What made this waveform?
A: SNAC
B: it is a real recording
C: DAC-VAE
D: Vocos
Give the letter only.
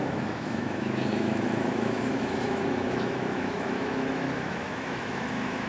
C